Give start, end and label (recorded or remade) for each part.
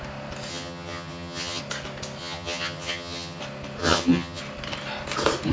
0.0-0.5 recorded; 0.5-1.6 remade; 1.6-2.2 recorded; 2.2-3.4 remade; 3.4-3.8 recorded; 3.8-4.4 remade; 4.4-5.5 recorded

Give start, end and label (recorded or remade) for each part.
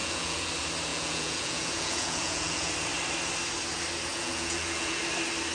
0.0-0.5 remade; 0.5-0.9 recorded; 0.9-2.7 remade; 2.7-4.1 recorded; 4.1-5.0 remade; 5.0-5.5 recorded